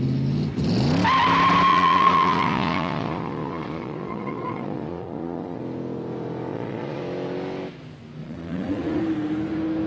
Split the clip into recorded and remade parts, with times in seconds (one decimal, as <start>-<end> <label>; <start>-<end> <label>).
0.0-1.7 recorded; 1.7-5.6 remade; 5.6-6.5 recorded; 6.5-7.0 remade; 7.0-8.2 recorded; 8.2-9.0 remade; 9.0-9.9 recorded